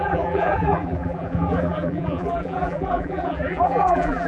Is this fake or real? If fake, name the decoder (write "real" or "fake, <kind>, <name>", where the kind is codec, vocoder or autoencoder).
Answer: fake, vocoder, BigVGAN v2